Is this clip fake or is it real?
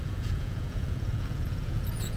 fake